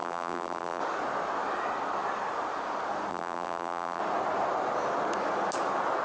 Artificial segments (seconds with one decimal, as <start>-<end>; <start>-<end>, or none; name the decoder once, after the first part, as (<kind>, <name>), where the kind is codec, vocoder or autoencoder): 0.0-0.8 (vocoder, BigVGAN v2); 3.1-4.0